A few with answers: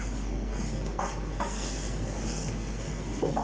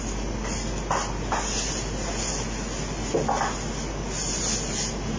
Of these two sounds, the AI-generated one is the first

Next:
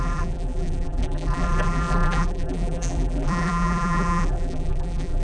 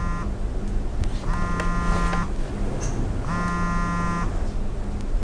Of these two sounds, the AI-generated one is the first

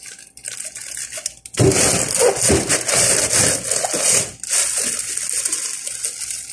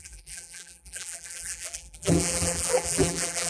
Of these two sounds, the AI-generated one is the second